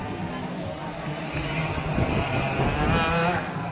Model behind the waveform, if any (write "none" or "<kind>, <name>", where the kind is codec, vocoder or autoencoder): none